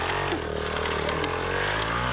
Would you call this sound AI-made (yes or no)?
no